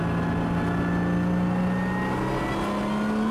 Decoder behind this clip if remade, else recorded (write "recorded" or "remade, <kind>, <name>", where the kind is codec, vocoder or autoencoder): recorded